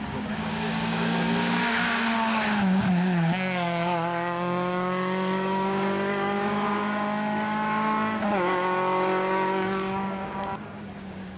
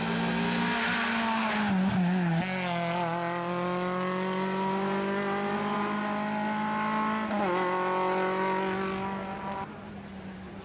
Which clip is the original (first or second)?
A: second